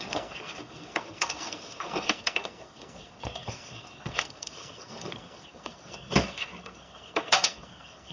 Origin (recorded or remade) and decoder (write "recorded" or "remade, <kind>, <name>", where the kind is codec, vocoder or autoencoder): remade, codec, SNAC